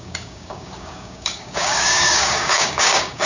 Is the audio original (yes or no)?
no